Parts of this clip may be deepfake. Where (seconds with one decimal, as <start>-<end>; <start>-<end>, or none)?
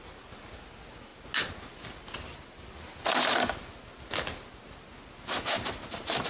none